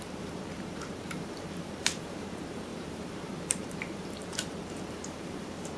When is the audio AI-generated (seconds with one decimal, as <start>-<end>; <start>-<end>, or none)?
0.0-5.8